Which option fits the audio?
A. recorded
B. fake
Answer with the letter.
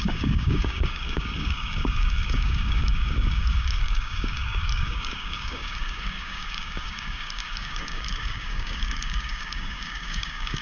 B